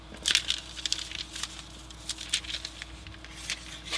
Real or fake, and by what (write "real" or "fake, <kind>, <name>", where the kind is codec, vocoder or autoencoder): real